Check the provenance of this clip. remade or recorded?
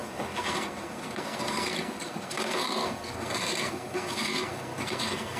remade